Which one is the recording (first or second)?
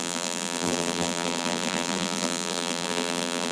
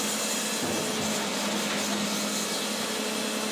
second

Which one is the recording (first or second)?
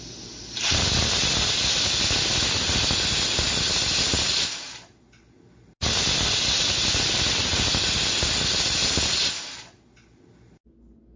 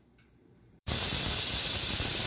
first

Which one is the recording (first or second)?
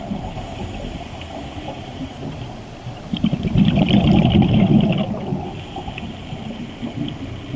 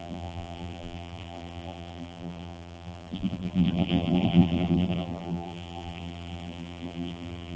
first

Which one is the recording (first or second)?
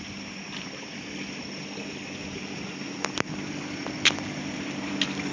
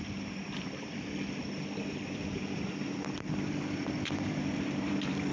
first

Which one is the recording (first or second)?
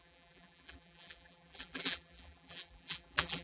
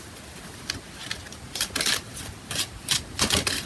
second